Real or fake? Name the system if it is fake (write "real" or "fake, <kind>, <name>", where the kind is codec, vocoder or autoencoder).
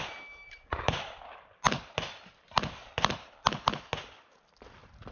real